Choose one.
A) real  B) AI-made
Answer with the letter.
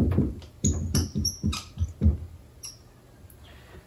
A